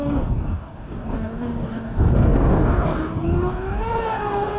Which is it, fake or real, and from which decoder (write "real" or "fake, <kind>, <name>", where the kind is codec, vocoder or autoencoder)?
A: fake, codec, DAC